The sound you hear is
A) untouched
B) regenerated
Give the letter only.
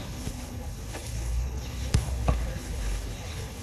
B